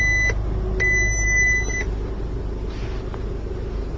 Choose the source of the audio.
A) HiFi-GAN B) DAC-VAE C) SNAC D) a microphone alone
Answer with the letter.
D